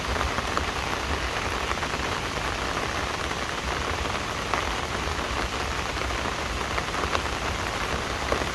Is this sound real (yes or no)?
yes